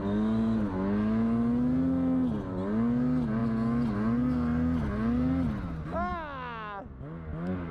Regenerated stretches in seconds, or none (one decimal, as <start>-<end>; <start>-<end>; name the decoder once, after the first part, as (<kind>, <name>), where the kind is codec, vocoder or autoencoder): none